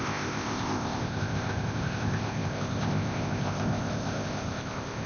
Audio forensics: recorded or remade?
remade